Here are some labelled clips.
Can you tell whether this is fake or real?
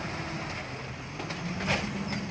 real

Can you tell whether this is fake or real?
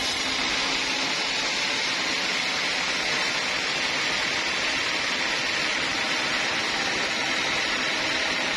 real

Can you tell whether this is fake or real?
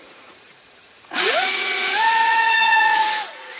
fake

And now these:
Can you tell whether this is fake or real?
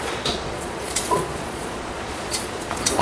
fake